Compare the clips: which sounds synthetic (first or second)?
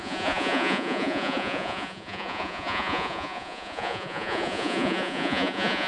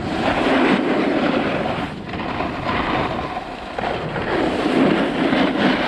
first